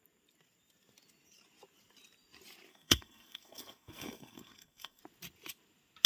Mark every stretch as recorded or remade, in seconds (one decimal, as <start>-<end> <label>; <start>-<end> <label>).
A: 0.0-2.7 recorded; 2.7-5.0 remade; 5.0-6.1 recorded